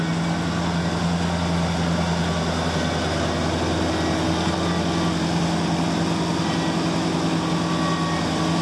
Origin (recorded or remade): recorded